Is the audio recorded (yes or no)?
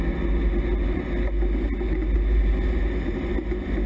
yes